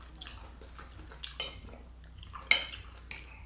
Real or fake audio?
real